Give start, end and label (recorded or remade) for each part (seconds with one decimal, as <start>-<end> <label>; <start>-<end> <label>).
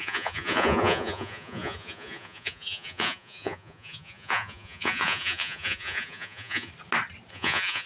0.0-6.7 remade; 6.7-7.3 recorded; 7.3-7.9 remade